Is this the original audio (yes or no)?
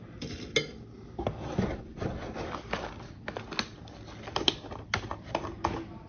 yes